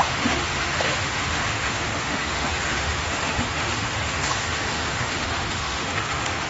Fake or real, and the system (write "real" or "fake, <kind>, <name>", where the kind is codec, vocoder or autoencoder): fake, autoencoder, DAC-VAE